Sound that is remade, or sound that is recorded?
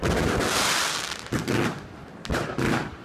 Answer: recorded